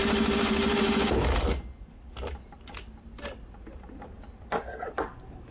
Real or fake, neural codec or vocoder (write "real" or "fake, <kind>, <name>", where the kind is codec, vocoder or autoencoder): real